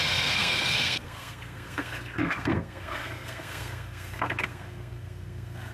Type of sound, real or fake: fake